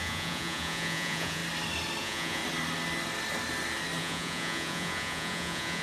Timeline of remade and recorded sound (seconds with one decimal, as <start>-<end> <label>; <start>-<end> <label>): 0.0-1.4 remade; 1.4-2.0 recorded; 2.0-2.4 remade; 2.4-4.0 recorded; 4.0-5.8 remade